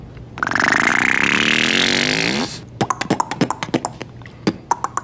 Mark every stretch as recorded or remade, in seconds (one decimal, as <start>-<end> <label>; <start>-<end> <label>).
0.0-5.0 recorded